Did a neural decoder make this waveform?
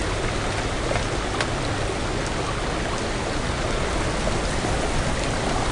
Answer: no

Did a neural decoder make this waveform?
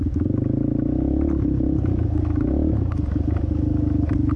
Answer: no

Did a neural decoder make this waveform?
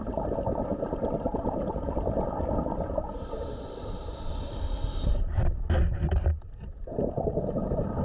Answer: no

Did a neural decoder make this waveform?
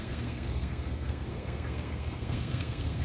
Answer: yes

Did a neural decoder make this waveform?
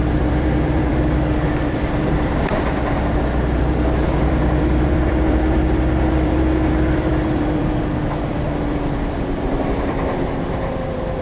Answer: yes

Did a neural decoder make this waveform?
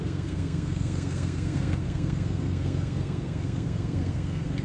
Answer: yes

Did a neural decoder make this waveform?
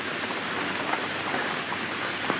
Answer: no